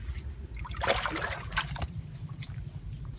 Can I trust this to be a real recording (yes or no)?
yes